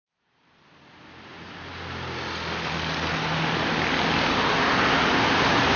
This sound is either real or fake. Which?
real